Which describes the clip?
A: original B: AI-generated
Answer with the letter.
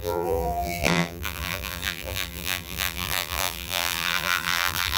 B